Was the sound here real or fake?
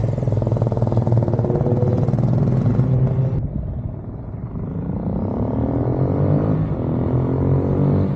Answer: real